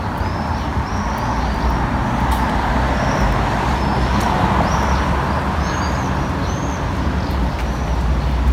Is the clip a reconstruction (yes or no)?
no